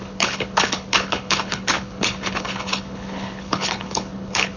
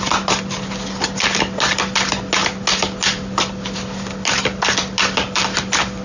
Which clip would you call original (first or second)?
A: second